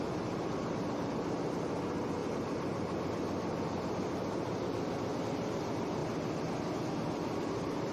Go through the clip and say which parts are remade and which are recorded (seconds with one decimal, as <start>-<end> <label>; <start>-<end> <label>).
0.0-7.9 recorded